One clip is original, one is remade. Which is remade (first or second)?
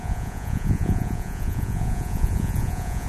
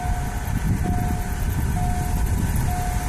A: first